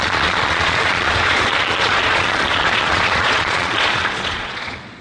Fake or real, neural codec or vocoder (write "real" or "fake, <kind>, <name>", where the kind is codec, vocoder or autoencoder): fake, vocoder, Vocos